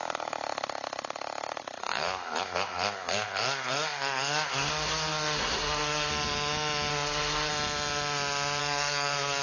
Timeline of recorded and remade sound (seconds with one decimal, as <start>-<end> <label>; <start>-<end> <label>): 0.0-1.8 recorded; 1.8-6.1 remade; 6.1-6.9 recorded; 6.9-7.5 remade; 7.5-8.6 recorded; 8.6-9.4 remade